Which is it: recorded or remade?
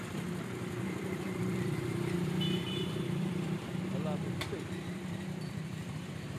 remade